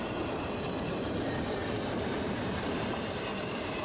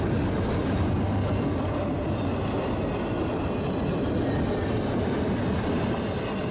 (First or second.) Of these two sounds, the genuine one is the second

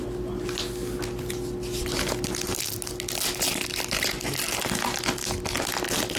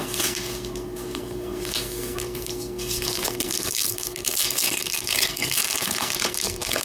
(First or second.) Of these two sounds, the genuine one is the first